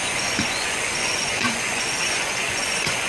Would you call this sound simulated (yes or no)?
yes